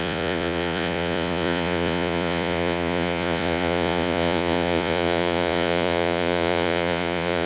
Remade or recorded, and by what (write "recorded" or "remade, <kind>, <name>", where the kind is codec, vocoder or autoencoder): remade, vocoder, Vocos